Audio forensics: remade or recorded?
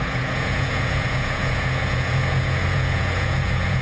remade